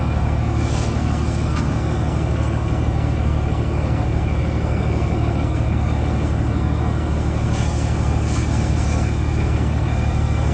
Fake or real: fake